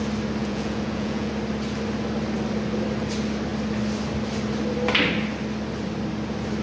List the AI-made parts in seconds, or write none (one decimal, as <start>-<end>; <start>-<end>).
0.4-1.3